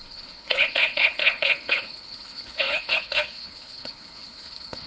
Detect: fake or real fake